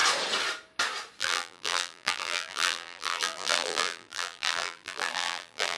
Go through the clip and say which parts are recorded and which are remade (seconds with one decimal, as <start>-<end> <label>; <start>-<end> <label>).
0.0-1.2 recorded; 1.2-5.8 remade